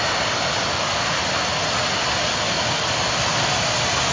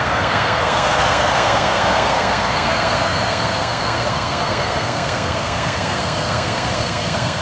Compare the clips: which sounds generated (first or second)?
second